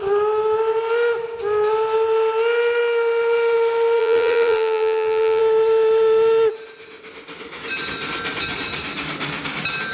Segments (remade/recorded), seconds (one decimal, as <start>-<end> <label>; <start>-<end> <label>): 0.0-4.0 recorded; 4.0-5.4 remade; 5.4-9.9 recorded